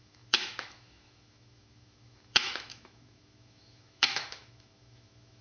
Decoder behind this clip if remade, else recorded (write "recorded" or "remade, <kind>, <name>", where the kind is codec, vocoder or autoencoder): remade, autoencoder, DAC-VAE